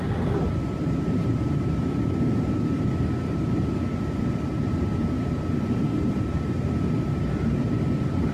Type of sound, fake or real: fake